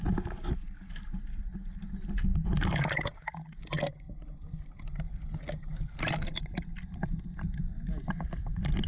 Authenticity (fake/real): real